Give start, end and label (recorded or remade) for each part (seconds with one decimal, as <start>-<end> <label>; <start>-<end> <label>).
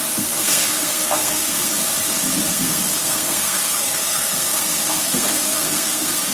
0.0-1.7 remade; 1.7-2.5 recorded; 2.5-6.3 remade